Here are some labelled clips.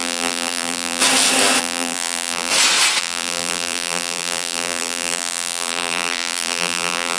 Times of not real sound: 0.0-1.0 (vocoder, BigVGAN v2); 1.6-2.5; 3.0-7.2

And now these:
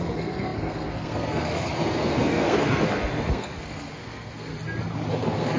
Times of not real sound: 0.0-4.5 (codec, SNAC); 5.1-5.6

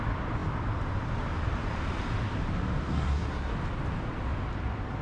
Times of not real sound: 2.9-3.5 (codec, SNAC)

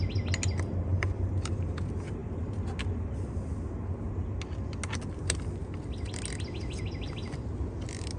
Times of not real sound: 0.9-1.5 (vocoder, BigVGAN v2)